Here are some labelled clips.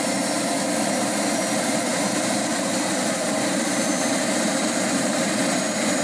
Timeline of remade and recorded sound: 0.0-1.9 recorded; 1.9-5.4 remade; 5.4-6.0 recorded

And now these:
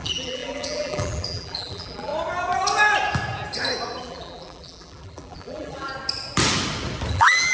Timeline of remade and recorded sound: 0.0-2.1 remade; 2.1-4.0 recorded; 4.0-5.9 remade; 5.9-7.1 recorded; 7.1-7.5 remade